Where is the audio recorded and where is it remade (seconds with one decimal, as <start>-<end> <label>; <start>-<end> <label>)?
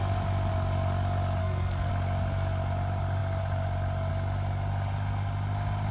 0.0-1.4 recorded; 1.4-1.9 remade; 1.9-5.9 recorded